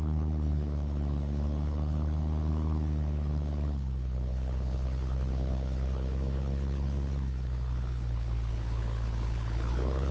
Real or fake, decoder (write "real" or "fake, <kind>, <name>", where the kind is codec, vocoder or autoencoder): fake, codec, HILCodec